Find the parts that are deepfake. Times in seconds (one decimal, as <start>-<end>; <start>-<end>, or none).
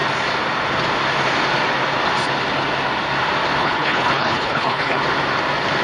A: 3.6-5.0